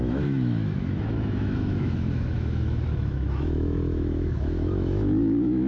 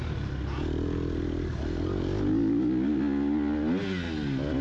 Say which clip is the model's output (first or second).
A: first